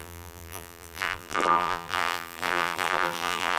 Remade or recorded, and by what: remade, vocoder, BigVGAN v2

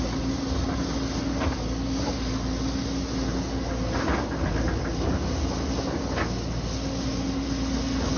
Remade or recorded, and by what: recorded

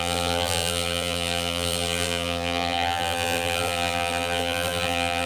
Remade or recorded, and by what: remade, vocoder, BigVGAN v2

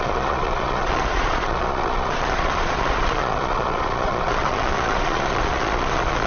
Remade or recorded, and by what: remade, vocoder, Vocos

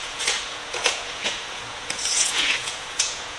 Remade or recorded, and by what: remade, vocoder, Vocos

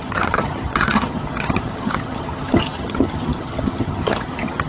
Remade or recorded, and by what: remade, vocoder, HiFi-GAN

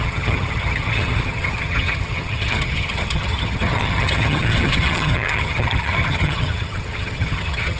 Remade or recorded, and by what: remade, vocoder, HiFi-GAN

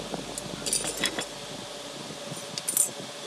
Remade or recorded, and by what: recorded